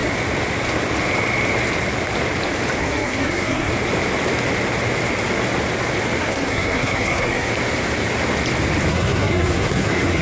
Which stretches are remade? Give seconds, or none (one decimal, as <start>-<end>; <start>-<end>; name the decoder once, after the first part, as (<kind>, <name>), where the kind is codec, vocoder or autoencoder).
2.8-3.7 (codec, SNAC); 6.2-7.5; 8.9-10.2